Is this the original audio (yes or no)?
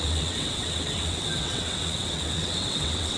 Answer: no